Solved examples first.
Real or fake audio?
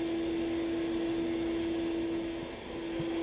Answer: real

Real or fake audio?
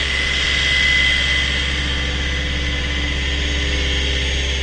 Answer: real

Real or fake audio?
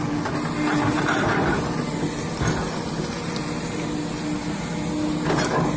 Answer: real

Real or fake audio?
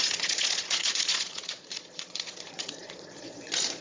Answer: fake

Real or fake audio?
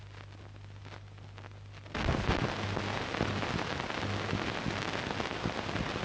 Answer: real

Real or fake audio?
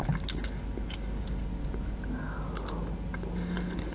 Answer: real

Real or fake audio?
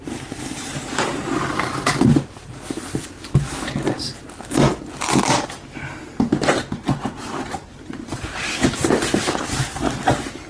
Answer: real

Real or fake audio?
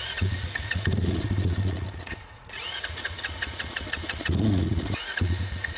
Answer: fake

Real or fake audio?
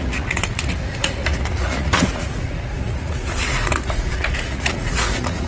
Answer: fake